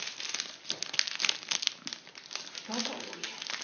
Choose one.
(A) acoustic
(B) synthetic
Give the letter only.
A